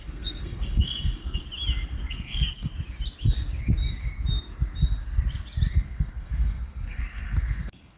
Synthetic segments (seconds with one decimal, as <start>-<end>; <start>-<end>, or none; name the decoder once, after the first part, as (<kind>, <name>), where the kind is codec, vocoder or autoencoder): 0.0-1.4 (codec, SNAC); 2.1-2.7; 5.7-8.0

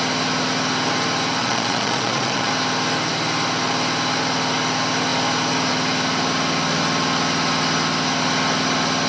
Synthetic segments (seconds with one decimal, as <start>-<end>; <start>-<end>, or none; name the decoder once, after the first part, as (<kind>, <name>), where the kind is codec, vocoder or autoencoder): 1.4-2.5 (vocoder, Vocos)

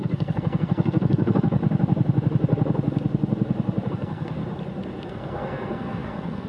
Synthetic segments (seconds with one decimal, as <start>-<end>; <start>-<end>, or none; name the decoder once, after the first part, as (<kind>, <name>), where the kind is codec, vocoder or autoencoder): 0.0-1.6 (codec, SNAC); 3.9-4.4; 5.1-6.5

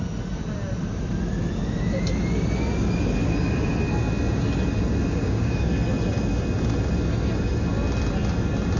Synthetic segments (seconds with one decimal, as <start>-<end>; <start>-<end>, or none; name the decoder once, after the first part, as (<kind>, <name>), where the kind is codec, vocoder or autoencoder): 5.1-5.7 (codec, DAC)

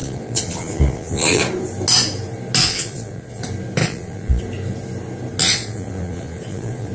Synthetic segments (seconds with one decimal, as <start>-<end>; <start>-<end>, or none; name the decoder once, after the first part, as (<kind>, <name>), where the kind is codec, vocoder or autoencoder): 0.0-1.4 (vocoder, Vocos); 2.6-3.4; 3.8-4.4; 5.4-6.9